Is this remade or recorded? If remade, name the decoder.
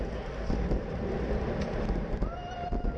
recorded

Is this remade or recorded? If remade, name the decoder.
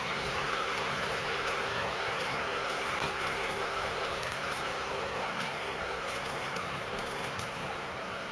remade, codec, SNAC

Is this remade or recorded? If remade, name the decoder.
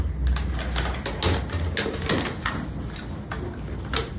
recorded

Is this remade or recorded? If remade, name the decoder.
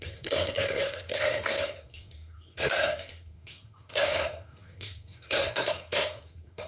remade, codec, SNAC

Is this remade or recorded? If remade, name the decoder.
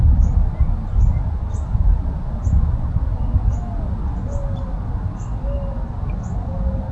recorded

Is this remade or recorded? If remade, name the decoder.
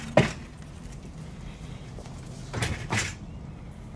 recorded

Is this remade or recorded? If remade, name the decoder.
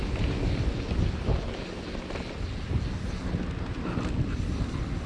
recorded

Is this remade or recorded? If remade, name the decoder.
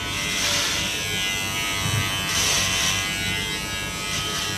recorded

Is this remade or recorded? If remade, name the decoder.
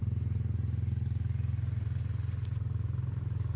recorded